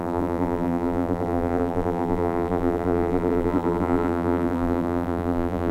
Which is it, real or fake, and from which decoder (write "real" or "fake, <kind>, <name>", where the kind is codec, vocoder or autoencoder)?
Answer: fake, vocoder, BigVGAN v2